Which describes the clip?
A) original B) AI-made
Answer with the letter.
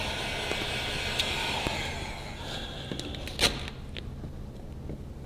A